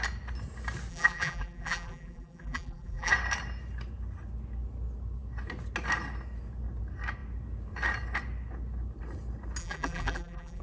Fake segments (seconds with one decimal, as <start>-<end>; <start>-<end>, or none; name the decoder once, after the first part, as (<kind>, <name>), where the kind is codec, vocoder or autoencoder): 0.9-3.1 (vocoder, BigVGAN v2); 9.6-10.6